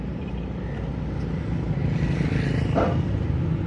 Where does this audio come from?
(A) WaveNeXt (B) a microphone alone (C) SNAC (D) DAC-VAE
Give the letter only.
B